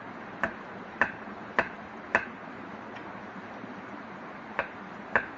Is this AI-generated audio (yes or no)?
no